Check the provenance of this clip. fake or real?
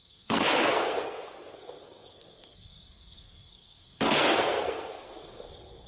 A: fake